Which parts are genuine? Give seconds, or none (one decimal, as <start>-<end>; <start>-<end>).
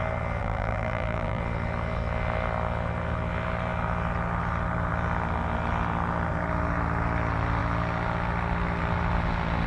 0.0-0.4; 1.4-9.7